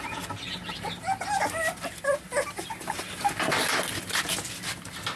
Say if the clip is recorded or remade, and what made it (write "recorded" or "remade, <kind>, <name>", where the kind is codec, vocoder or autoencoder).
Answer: recorded